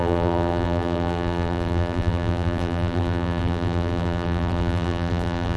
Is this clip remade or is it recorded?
remade